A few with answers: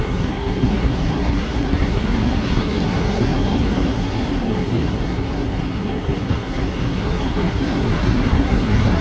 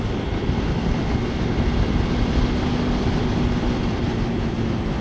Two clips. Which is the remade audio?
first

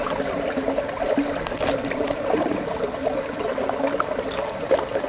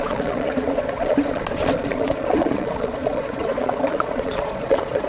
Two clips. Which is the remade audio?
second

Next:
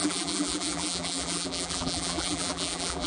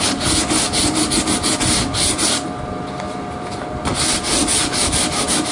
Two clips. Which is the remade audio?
first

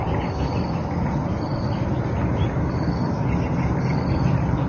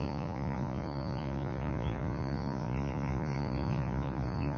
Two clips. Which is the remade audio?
second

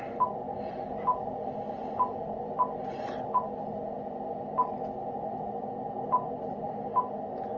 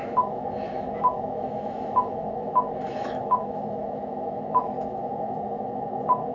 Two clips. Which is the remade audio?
second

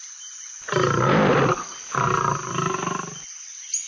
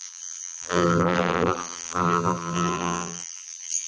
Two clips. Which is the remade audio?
second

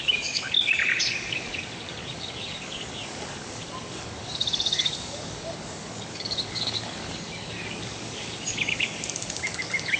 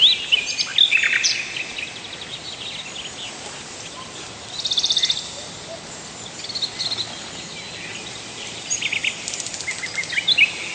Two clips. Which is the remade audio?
first